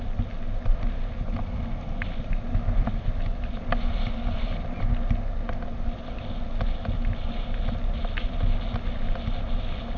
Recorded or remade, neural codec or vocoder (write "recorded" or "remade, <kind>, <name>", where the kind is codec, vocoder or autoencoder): recorded